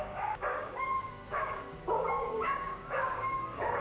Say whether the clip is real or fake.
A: fake